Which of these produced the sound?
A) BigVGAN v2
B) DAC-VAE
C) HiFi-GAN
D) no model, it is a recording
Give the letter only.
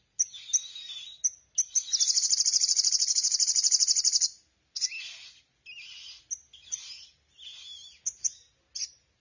D